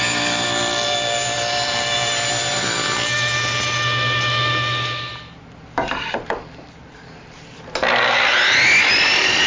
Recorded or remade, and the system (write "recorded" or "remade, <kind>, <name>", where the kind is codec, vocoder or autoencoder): recorded